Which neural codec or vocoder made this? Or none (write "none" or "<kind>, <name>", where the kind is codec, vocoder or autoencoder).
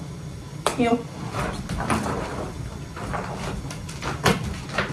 vocoder, BigVGAN v2